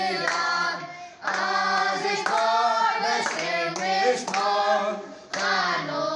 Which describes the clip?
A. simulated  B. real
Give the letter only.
B